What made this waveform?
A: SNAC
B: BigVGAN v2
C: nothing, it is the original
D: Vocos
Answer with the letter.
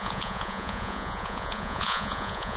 D